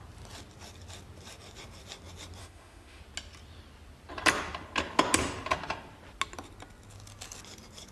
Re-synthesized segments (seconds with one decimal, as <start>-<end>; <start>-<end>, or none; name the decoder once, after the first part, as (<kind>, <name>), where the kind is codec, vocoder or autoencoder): 2.4-3.0 (autoencoder, DAC-VAE)